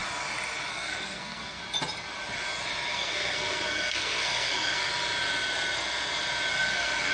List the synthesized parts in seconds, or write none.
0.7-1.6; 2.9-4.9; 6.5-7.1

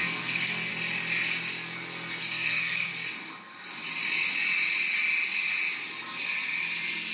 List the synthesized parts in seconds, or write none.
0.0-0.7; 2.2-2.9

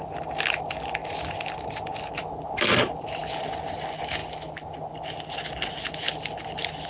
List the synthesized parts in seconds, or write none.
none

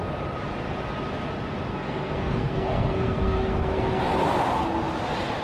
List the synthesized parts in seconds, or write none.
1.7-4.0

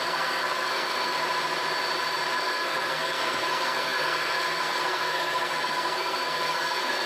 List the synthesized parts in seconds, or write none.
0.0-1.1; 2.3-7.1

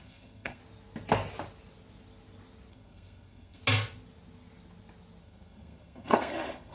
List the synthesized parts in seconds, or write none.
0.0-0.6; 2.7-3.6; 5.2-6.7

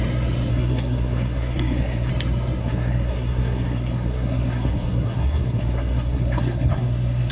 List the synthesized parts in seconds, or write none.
0.5-2.1; 2.6-7.3

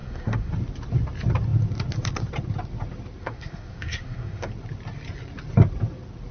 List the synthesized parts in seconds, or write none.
0.0-0.5; 3.2-4.5